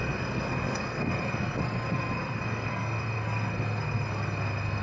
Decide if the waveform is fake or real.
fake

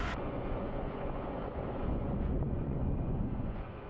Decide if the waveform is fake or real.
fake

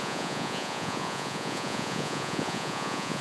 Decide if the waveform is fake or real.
fake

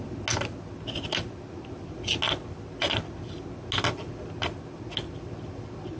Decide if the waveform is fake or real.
real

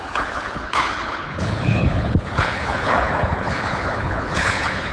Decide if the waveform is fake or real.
fake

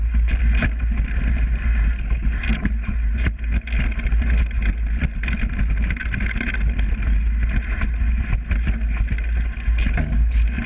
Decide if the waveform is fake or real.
real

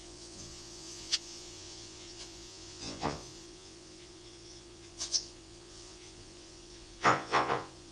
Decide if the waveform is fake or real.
fake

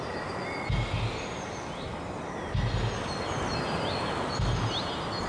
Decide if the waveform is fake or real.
real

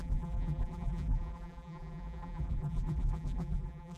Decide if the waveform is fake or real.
fake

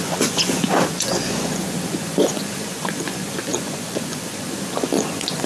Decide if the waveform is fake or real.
fake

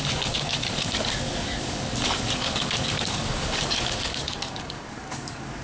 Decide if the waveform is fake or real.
fake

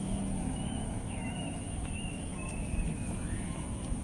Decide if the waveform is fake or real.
fake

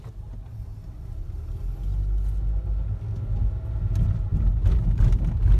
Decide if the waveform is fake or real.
real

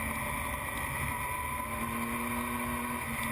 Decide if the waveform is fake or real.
real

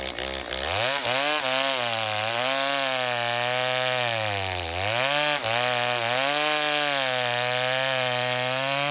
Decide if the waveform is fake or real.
real